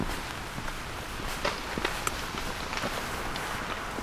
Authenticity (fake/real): real